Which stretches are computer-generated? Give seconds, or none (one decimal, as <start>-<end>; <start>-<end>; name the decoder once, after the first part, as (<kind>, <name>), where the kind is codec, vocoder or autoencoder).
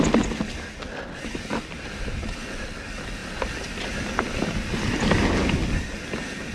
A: none